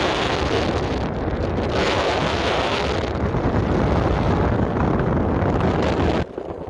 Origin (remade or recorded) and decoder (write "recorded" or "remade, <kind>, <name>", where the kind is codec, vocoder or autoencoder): recorded